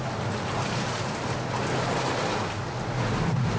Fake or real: real